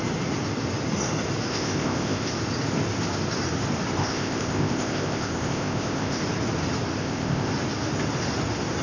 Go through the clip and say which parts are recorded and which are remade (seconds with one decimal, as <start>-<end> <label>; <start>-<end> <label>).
0.0-1.5 recorded; 1.5-2.3 remade; 2.3-4.0 recorded; 4.0-6.2 remade; 6.2-7.0 recorded; 7.0-7.5 remade; 7.5-8.8 recorded